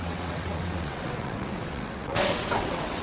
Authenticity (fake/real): fake